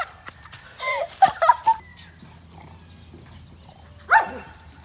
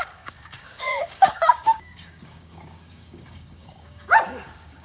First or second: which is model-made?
second